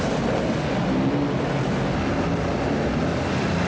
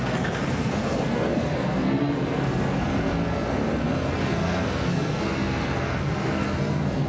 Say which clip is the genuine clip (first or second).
first